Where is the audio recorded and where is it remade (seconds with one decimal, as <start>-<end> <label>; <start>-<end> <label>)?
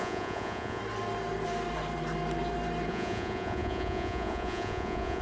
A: 0.0-0.8 remade; 0.8-2.9 recorded; 2.9-5.2 remade